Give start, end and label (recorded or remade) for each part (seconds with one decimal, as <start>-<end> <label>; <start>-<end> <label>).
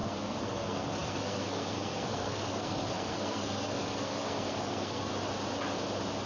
0.0-5.1 remade; 5.1-6.3 recorded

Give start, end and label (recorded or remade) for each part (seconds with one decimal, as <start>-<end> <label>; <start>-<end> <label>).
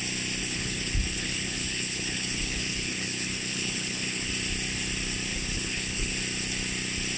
0.0-0.4 recorded; 0.4-4.3 remade; 4.3-5.3 recorded; 5.3-6.1 remade; 6.1-7.2 recorded